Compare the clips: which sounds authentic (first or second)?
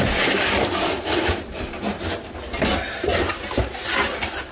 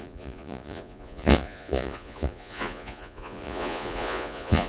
first